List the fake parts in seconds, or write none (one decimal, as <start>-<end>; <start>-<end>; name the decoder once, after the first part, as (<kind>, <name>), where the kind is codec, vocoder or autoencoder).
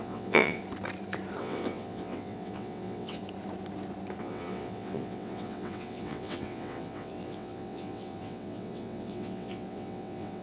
0.0-0.6 (vocoder, WaveNeXt); 1.4-3.2; 4.2-10.4